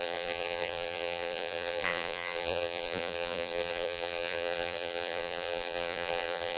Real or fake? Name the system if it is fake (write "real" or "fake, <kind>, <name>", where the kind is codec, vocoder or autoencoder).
fake, vocoder, BigVGAN v2